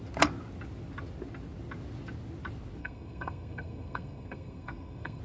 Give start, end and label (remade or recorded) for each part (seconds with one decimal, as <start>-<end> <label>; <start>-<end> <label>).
0.0-2.8 recorded; 2.8-5.2 remade